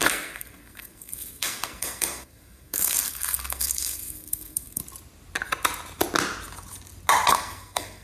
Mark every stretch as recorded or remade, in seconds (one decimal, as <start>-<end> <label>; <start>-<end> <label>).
0.0-4.8 remade; 4.8-7.3 recorded; 7.3-8.0 remade

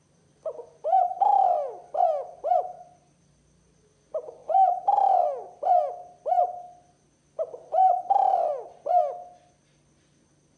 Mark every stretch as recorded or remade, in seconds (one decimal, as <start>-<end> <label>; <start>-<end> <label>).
0.0-10.6 recorded

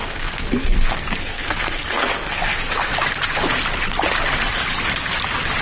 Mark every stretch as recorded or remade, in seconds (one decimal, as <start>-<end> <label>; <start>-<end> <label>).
0.0-2.9 remade; 2.9-5.6 recorded

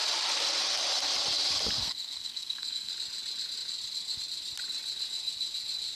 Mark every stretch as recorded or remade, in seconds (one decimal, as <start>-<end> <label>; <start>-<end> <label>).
0.0-1.8 recorded; 1.8-2.9 remade; 2.9-6.0 recorded

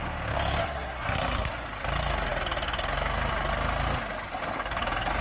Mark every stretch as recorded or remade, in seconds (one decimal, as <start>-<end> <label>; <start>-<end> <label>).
0.0-0.6 recorded; 0.6-1.5 remade; 1.5-5.2 recorded

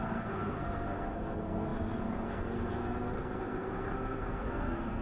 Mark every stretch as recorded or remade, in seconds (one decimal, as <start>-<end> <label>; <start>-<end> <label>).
0.0-5.0 remade

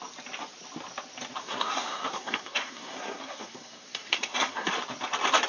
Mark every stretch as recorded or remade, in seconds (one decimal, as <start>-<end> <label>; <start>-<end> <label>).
0.0-1.4 recorded; 1.4-4.7 remade; 4.7-5.5 recorded